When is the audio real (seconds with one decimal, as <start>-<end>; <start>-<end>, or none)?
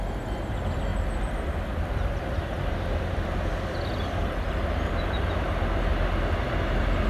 0.0-0.9; 5.2-7.1